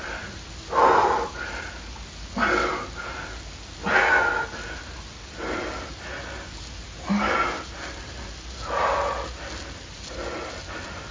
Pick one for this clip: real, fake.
real